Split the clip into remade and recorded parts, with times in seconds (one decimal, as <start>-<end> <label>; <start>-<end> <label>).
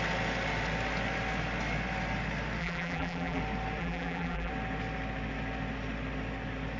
0.0-2.6 recorded; 2.6-3.4 remade; 3.4-3.8 recorded; 3.8-4.5 remade; 4.5-6.8 recorded